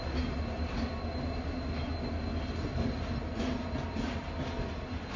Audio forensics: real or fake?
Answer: real